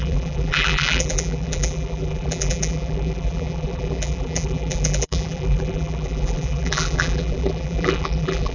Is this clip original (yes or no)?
no